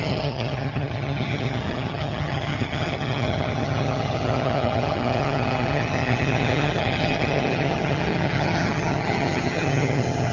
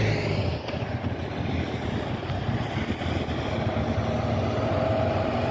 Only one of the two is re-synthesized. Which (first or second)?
first